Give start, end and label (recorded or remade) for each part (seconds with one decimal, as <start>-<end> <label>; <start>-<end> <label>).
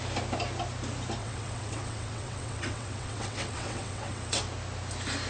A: 0.0-1.2 recorded; 1.2-4.4 remade; 4.4-5.3 recorded